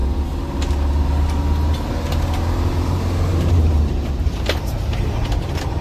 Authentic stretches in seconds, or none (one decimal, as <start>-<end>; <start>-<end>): 0.0-3.5